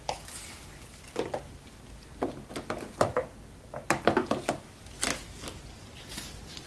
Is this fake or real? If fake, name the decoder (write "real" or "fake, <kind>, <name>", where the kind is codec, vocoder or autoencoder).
real